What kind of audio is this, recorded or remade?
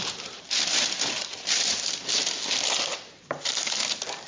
remade